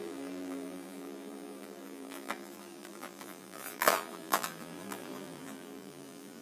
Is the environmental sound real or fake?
fake